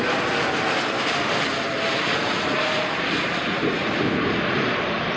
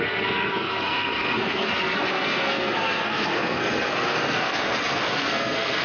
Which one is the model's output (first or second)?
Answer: second